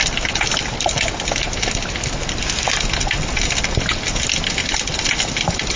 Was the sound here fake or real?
real